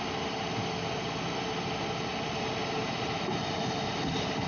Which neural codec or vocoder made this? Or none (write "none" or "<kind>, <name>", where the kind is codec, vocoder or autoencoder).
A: none